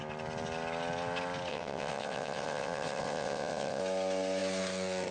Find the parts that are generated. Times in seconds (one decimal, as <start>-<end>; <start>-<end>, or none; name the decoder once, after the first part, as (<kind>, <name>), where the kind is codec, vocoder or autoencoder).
1.5-3.8 (vocoder, WaveNeXt)